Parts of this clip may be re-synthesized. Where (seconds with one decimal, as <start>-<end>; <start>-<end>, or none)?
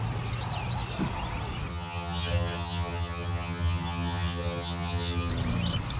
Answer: 1.7-5.3